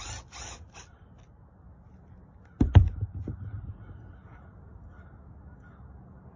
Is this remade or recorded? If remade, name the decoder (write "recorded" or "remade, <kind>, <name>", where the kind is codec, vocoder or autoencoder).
recorded